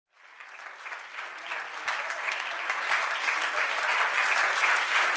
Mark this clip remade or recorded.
recorded